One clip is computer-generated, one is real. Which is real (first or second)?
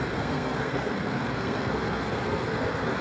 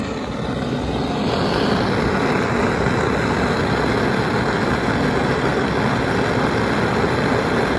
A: second